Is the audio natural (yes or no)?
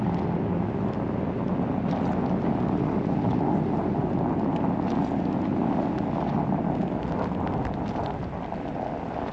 yes